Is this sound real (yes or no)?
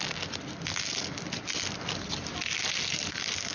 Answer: yes